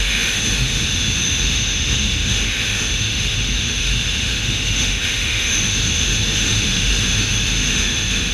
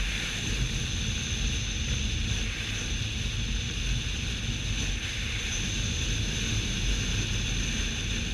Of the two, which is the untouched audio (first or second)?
second